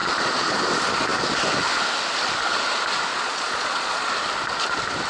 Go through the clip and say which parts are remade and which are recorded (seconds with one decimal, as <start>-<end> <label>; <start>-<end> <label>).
0.0-0.5 remade; 0.5-3.1 recorded; 3.1-4.1 remade; 4.1-5.1 recorded